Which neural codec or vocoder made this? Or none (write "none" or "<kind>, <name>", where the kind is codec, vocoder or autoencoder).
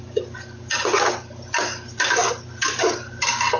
none